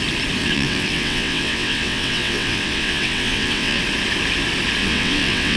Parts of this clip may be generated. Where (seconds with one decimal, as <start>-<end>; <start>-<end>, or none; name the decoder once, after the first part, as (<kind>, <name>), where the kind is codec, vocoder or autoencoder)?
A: 0.4-3.8 (vocoder, WaveNeXt); 4.8-5.6